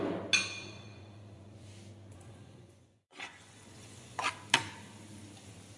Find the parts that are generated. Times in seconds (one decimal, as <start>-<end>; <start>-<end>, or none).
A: 0.6-1.7; 2.1-4.2